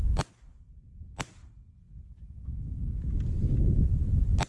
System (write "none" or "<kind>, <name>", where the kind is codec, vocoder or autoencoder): none